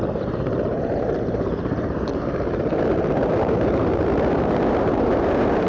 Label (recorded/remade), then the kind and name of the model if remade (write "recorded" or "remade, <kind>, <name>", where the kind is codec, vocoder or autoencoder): remade, vocoder, BigVGAN v2